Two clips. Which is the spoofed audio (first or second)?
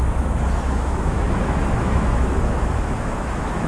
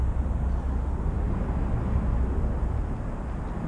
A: first